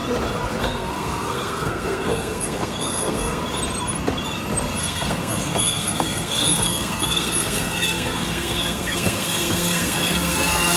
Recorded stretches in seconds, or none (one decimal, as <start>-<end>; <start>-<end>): 0.0-0.6; 3.4-4.8